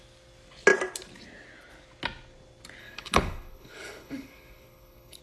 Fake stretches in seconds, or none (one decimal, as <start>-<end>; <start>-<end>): 2.8-5.2